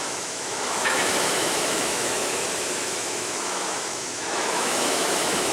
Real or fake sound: fake